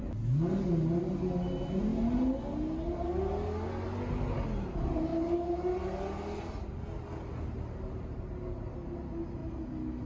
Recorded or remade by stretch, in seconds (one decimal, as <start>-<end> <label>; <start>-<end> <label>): 0.0-5.1 recorded; 5.1-5.7 remade; 5.7-10.1 recorded